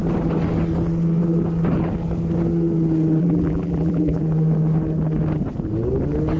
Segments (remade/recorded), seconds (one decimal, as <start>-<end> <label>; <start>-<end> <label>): 0.0-3.2 recorded; 3.2-4.2 remade; 4.2-6.4 recorded